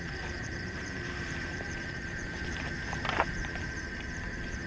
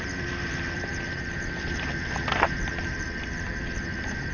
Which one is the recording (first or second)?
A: second